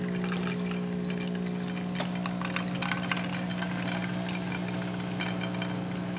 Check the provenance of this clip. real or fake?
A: real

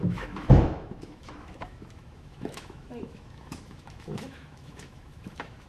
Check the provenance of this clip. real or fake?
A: fake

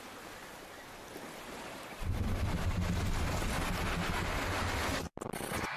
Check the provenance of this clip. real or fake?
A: real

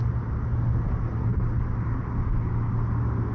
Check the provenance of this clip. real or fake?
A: real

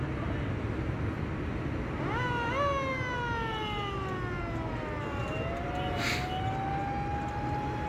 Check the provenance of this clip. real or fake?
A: real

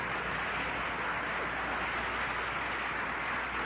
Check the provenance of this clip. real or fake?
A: real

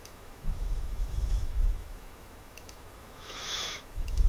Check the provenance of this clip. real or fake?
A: fake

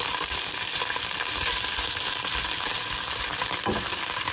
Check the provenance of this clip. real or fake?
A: real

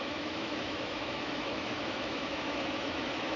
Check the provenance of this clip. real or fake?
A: fake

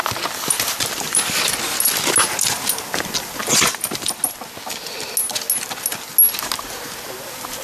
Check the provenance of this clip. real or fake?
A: real